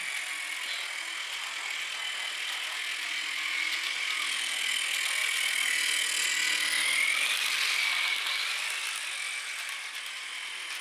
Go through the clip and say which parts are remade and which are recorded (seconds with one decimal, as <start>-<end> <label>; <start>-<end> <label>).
0.0-10.8 recorded